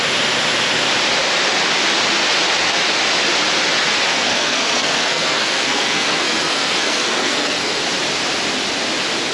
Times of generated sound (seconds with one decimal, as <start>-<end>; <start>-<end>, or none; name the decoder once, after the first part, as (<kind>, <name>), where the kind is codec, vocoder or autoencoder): 4.1-7.8 (codec, SNAC)